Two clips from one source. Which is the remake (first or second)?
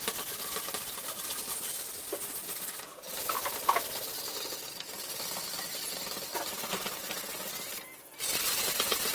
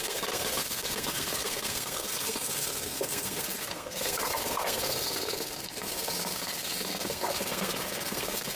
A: second